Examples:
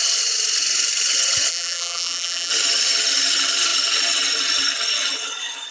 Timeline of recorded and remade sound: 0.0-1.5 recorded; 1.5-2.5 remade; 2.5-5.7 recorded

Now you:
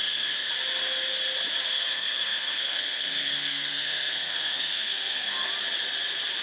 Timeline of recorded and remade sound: 0.0-0.5 remade; 0.5-1.7 recorded; 1.7-5.5 remade; 5.5-6.4 recorded

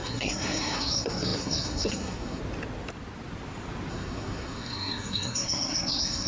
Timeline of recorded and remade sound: 0.0-2.4 remade; 2.4-3.9 recorded; 3.9-6.3 remade

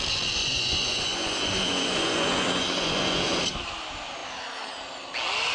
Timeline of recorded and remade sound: 0.0-0.4 recorded; 0.4-3.4 remade; 3.4-5.5 recorded

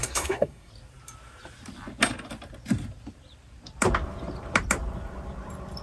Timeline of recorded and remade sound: 0.0-0.7 remade; 0.7-5.8 recorded

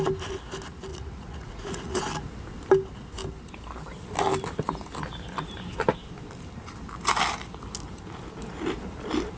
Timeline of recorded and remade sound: 0.0-0.9 recorded; 0.9-2.0 remade; 2.0-9.4 recorded